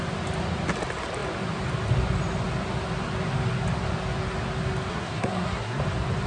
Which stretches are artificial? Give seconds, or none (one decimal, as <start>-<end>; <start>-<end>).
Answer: 4.9-5.8